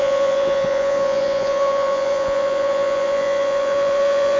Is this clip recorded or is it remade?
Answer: remade